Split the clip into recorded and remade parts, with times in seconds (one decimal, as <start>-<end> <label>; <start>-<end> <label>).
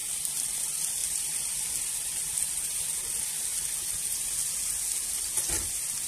0.0-3.0 remade; 3.0-6.1 recorded